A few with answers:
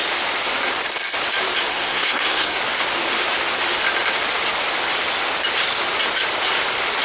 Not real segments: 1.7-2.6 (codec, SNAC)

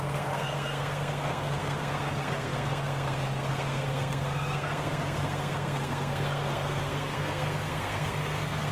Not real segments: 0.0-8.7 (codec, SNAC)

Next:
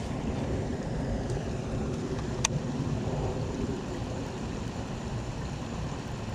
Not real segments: none

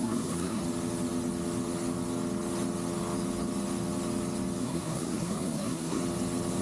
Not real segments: 0.0-0.6 (codec, SNAC); 4.6-6.0